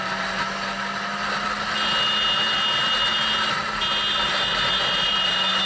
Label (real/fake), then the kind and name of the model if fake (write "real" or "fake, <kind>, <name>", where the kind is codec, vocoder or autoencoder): real